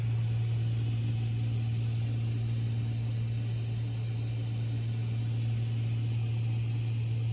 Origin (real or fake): real